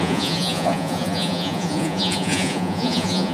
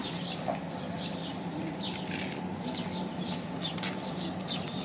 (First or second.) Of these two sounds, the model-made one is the first